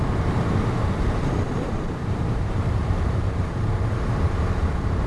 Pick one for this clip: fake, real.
fake